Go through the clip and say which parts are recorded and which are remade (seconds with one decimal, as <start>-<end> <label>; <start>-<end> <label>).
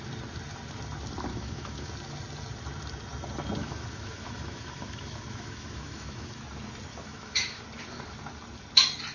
0.0-1.3 recorded; 1.3-1.9 remade; 1.9-3.6 recorded; 3.6-6.4 remade; 6.4-6.9 recorded; 6.9-7.6 remade; 7.6-9.1 recorded